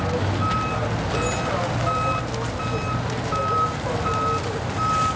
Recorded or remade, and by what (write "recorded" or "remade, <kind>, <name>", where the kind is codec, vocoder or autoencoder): recorded